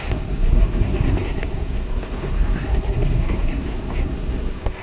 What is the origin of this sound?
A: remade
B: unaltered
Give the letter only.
A